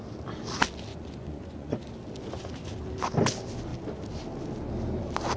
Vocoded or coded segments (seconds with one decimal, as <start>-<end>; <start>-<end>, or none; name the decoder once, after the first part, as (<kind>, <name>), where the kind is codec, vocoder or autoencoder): 0.9-1.9 (vocoder, Vocos)